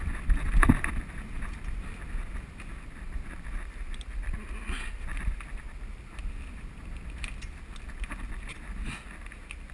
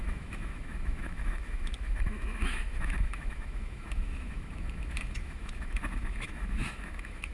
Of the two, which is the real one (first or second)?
first